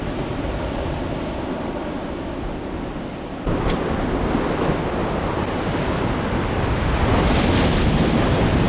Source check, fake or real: real